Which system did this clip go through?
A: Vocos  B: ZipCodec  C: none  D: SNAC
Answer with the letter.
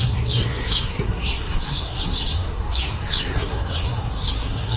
D